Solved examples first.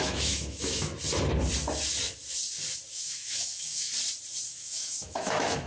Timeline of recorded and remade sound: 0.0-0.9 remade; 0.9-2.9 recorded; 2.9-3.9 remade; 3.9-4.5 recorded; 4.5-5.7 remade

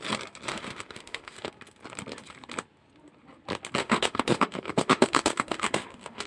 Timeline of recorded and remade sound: 0.0-0.5 recorded; 0.5-1.5 remade; 1.5-3.8 recorded; 3.8-6.3 remade

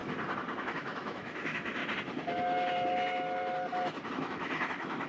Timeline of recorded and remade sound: 0.0-0.6 recorded; 0.6-1.8 remade; 1.8-4.1 recorded; 4.1-5.1 remade

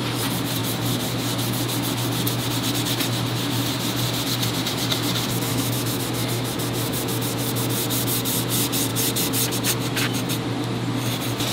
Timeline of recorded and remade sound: 0.0-5.5 recorded; 5.5-6.0 remade; 6.0-11.5 recorded

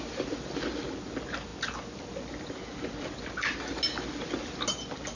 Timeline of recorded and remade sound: 0.0-5.2 recorded